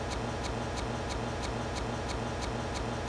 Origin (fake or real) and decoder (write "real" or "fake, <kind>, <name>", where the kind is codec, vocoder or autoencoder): real